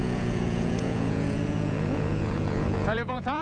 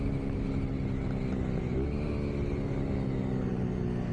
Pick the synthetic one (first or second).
first